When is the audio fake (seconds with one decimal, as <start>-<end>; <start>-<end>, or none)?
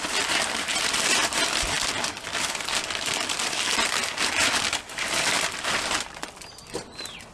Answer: none